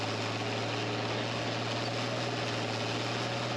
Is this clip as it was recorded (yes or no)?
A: yes